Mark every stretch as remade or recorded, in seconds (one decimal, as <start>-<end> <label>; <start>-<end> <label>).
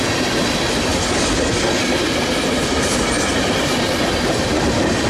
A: 0.0-5.1 recorded